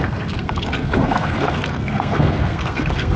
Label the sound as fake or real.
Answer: fake